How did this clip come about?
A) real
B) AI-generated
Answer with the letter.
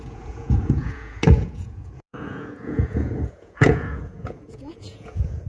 B